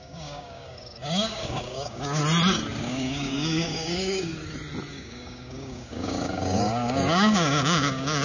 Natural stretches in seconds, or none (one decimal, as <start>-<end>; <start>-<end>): 2.2-2.8; 4.3-4.9